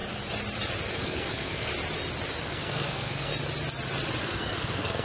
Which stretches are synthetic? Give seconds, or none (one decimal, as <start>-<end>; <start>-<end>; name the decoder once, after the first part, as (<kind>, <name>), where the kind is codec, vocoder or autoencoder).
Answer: 0.9-1.7 (codec, SNAC); 2.4-3.3; 4.2-5.0